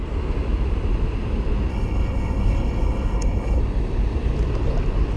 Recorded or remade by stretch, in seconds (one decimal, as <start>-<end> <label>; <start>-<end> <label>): 0.0-1.7 recorded; 1.7-3.6 remade; 3.6-5.2 recorded